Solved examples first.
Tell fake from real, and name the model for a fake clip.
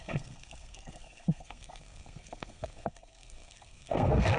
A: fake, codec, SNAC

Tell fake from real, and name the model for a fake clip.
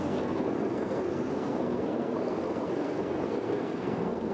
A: fake, codec, SNAC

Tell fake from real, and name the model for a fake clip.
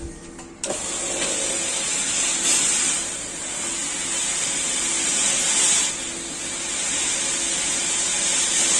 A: real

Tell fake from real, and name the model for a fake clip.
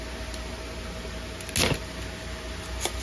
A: real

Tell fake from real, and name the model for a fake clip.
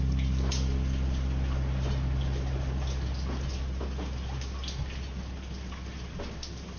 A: real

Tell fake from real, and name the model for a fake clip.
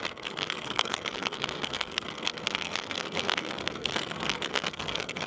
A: fake, codec, SNAC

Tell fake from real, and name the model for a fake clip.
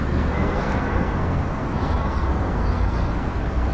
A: fake, codec, SNAC